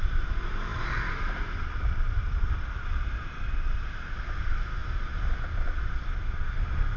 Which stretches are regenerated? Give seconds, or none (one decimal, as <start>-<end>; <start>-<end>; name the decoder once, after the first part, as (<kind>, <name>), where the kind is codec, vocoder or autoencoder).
0.7-3.1 (vocoder, BigVGAN v2)